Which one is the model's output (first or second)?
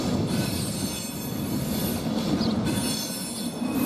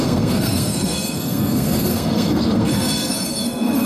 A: second